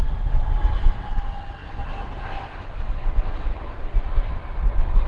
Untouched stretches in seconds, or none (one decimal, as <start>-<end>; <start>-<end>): 3.5-5.1